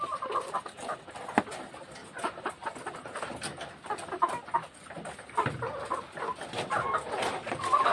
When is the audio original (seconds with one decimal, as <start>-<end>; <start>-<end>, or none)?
0.0-7.9